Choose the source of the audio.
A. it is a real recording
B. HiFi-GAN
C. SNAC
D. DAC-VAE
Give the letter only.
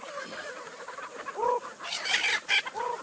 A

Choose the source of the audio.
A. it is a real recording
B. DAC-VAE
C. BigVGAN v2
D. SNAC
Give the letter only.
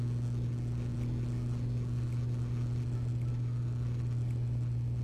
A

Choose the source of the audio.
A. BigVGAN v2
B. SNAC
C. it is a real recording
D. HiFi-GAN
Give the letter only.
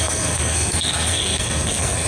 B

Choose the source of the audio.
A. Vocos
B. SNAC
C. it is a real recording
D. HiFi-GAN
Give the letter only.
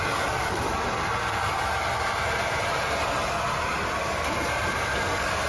C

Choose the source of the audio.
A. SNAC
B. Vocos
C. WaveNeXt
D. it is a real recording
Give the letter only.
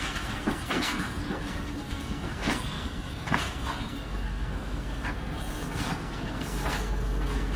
A